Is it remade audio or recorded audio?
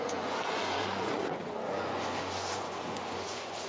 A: remade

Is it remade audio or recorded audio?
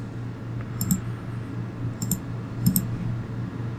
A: recorded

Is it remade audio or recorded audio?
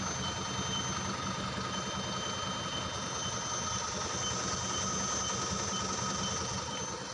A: recorded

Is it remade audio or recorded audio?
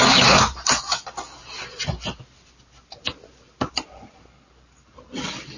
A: recorded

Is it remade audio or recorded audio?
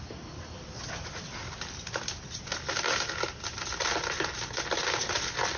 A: recorded